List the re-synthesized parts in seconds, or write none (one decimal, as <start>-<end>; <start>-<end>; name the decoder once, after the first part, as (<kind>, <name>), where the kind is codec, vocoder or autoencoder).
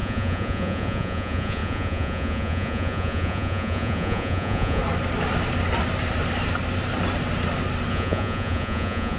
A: 0.0-4.8 (vocoder, Vocos); 7.9-9.2